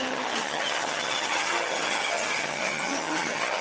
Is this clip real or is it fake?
fake